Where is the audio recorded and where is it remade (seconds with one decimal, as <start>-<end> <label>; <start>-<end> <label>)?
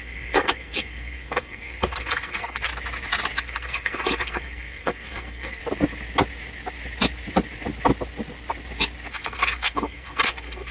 0.0-2.7 remade; 2.7-3.4 recorded; 3.4-5.6 remade; 5.6-9.1 recorded; 9.1-10.7 remade